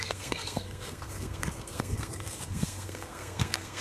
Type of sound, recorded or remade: remade